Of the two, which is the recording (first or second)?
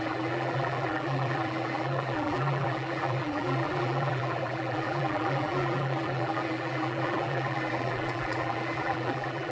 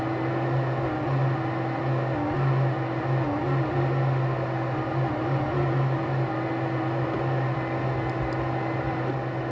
second